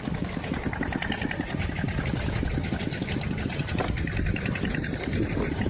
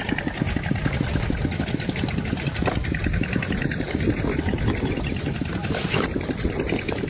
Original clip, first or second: second